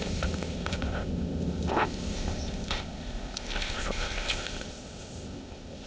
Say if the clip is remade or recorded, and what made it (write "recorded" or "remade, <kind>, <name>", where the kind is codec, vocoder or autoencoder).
remade, codec, ZipCodec